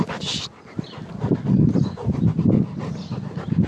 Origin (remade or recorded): recorded